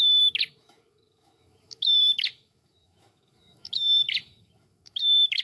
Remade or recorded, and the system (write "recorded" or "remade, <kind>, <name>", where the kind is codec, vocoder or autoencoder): remade, autoencoder, DAC-VAE